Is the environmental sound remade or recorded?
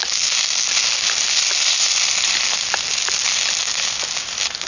recorded